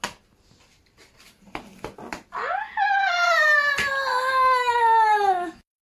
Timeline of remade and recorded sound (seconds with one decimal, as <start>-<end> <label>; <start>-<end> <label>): 0.0-4.1 recorded; 4.1-5.8 remade

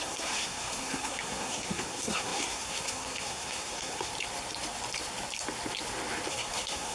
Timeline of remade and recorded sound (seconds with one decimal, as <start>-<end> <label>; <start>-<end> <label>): 0.0-4.1 remade; 4.1-6.3 recorded; 6.3-6.9 remade

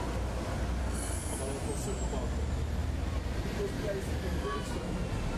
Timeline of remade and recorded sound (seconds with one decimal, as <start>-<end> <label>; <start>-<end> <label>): 0.0-0.8 recorded; 0.8-1.4 remade; 1.4-5.4 recorded